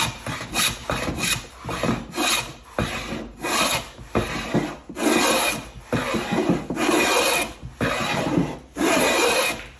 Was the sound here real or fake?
real